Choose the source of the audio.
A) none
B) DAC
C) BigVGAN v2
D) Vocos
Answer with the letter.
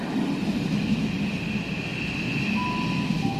A